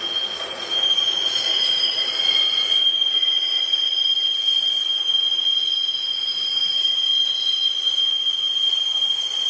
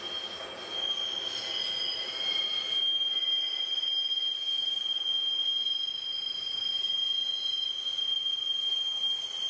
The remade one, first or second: first